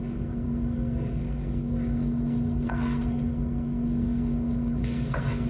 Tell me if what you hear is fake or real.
fake